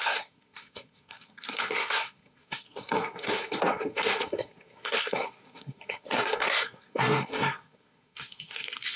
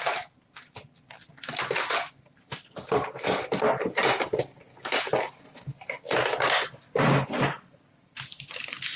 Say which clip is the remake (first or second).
first